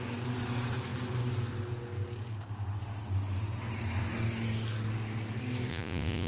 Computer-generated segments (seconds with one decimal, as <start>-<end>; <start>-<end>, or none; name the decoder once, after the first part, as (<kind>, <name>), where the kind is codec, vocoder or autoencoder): 5.7-6.3 (vocoder, Vocos)